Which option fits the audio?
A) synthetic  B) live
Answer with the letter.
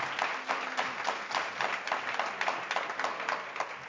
B